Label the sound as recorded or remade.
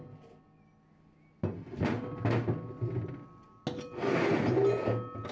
recorded